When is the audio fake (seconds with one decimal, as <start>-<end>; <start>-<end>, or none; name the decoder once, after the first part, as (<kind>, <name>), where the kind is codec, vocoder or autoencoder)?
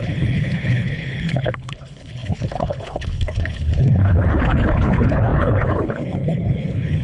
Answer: 0.0-7.0 (codec, HILCodec)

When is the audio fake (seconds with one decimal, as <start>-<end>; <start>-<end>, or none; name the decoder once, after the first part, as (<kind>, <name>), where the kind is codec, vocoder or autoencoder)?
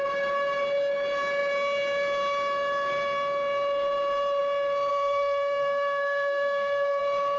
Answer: 4.9-7.0 (codec, SNAC)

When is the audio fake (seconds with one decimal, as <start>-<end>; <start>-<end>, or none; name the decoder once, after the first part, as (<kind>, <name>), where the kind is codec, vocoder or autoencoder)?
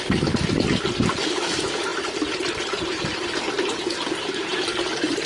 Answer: 0.0-5.3 (vocoder, BigVGAN v2)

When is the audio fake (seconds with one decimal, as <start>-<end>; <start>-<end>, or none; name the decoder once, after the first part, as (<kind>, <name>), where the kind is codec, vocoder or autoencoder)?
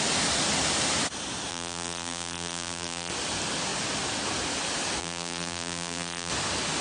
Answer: 1.5-3.1 (vocoder, BigVGAN v2); 5.0-6.3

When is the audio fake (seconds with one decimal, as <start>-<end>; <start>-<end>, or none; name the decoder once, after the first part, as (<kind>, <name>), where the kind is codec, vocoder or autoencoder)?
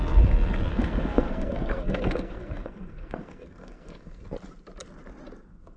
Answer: 0.7-4.2 (codec, SNAC)